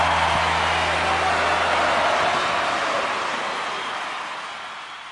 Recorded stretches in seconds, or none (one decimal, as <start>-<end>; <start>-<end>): 0.0-5.1